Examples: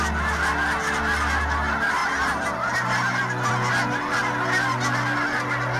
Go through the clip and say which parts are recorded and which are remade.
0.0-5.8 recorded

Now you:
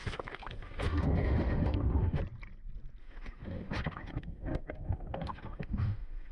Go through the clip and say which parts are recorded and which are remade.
0.0-2.2 remade; 2.2-3.0 recorded; 3.0-6.3 remade

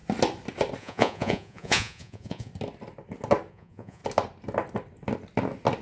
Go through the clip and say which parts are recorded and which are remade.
0.0-0.8 recorded; 0.8-2.5 remade; 2.5-3.5 recorded; 3.5-4.0 remade; 4.0-5.8 recorded